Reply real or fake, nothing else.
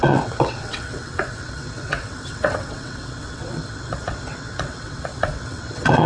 fake